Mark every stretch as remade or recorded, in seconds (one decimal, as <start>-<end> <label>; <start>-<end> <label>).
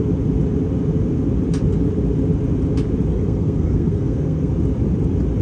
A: 0.0-3.1 recorded; 3.1-4.5 remade; 4.5-5.4 recorded